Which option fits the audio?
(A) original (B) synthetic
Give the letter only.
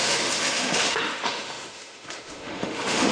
B